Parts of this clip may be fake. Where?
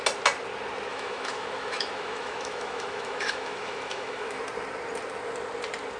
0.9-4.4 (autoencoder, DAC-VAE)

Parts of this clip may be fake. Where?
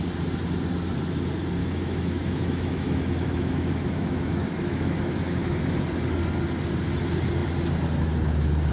1.6-5.6 (autoencoder, DAC-VAE)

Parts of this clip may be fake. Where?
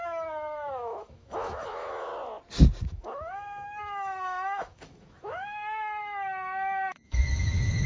0.0-2.1 (autoencoder, DAC-VAE); 2.9-7.9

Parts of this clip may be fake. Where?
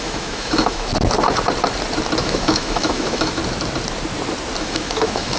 0.0-0.9 (autoencoder, DAC-VAE); 2.2-3.4; 4.6-5.4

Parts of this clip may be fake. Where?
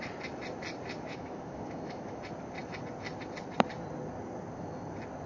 1.1-2.2 (autoencoder, DAC-VAE)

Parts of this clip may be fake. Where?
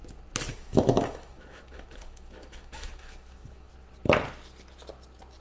0.5-3.7 (autoencoder, DAC-VAE)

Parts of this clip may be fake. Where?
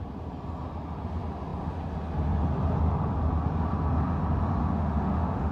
4.6-5.5 (autoencoder, DAC-VAE)